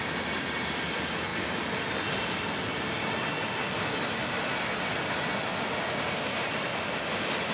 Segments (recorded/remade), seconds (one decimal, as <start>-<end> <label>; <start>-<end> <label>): 0.0-7.5 recorded